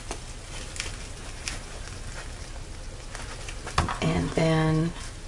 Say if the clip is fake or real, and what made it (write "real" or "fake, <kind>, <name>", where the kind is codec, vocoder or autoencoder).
real